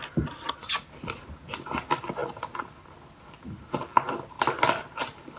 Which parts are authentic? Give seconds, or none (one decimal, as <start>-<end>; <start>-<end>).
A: 0.0-5.4